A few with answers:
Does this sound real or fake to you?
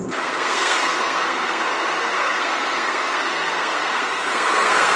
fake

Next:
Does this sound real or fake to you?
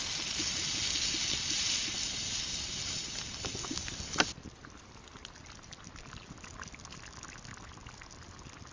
real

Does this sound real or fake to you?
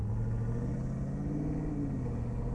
real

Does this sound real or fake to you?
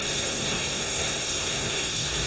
fake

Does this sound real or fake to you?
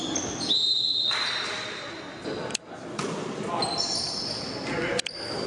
real